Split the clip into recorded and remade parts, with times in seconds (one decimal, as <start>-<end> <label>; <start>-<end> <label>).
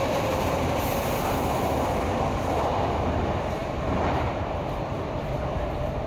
0.0-3.6 recorded; 3.6-5.2 remade; 5.2-6.1 recorded